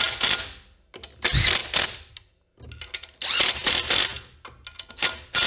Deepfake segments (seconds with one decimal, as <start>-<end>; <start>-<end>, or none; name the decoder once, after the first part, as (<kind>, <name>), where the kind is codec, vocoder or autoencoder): none

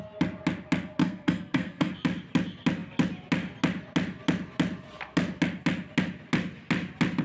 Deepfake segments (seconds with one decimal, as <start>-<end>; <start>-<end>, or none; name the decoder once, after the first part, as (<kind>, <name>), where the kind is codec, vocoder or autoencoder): 1.0-1.9 (codec, SNAC)

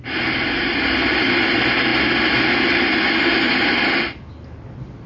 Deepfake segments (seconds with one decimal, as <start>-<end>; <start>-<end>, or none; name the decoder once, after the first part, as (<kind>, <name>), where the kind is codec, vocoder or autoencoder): none

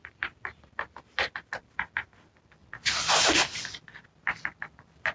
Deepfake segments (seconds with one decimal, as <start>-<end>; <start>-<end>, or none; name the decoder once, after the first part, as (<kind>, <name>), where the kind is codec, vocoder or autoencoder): none

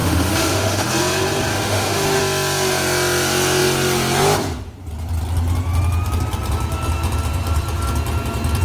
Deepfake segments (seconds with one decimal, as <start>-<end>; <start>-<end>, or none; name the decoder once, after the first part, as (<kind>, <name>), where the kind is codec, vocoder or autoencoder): 0.0-0.9 (autoencoder, DAC-VAE); 1.5-2.2

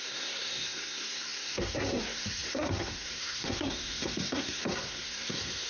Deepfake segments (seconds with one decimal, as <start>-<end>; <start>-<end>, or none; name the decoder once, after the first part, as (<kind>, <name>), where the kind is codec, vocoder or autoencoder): 0.0-5.7 (codec, SNAC)